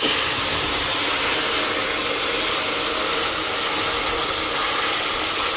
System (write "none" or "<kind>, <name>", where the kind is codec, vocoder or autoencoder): none